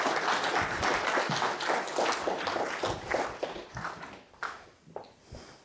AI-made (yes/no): no